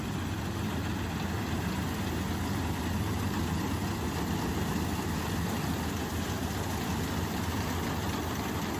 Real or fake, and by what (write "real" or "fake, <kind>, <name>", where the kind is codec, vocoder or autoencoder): real